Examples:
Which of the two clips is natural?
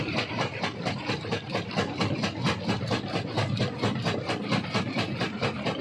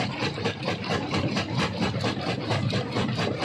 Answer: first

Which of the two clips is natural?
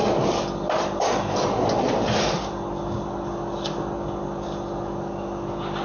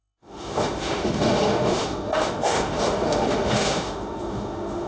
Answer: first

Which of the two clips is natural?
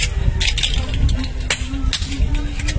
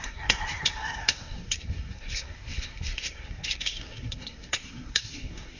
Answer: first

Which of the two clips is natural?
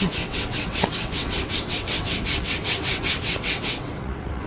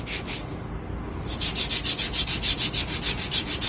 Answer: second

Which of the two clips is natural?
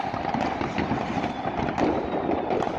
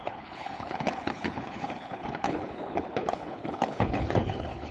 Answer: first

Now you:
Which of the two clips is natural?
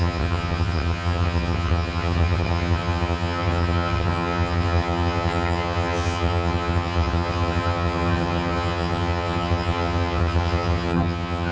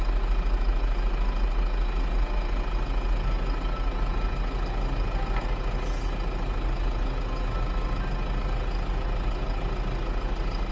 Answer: second